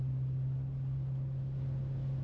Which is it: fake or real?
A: real